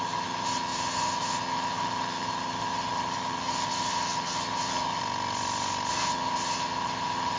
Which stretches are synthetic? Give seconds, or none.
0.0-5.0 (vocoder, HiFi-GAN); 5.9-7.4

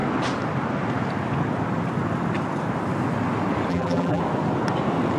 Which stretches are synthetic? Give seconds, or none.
3.7-4.2 (vocoder, BigVGAN v2)

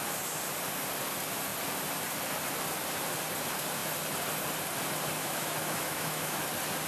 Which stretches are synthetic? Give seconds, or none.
5.2-6.4 (autoencoder, DAC-VAE)

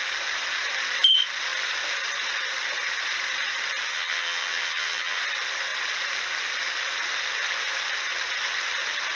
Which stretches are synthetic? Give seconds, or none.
3.9-5.2 (vocoder, HiFi-GAN)

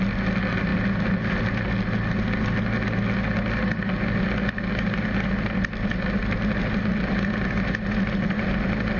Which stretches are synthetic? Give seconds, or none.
none

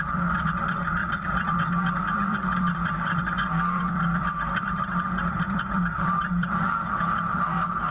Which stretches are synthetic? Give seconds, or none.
0.0-7.9 (vocoder, BigVGAN v2)

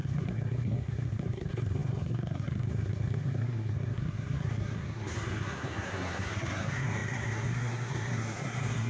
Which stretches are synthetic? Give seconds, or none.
0.0-8.9 (codec, SNAC)